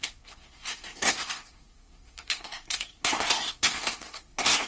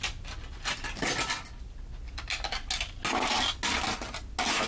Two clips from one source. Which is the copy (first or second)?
first